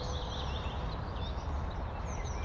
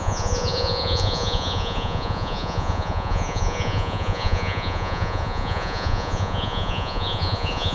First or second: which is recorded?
first